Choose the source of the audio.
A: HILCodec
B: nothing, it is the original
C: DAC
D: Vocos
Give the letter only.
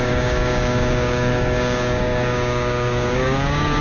C